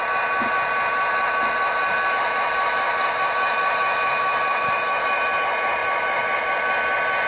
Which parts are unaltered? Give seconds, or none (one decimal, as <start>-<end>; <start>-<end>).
0.0-7.3